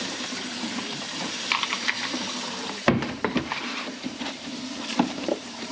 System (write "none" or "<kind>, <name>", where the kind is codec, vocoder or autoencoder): vocoder, BigVGAN v2